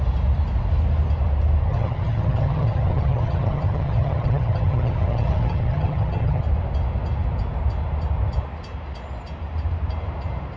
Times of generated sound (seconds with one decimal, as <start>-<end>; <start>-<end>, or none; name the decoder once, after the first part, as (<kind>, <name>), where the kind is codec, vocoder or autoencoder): 1.7-6.4 (vocoder, HiFi-GAN)